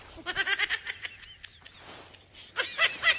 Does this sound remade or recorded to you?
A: recorded